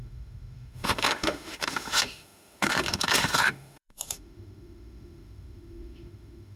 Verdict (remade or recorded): remade